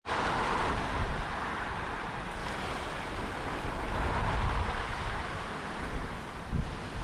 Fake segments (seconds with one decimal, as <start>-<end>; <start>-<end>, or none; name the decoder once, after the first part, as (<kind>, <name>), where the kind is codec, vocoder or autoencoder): 0.6-1.1 (vocoder, BigVGAN v2); 2.4-6.1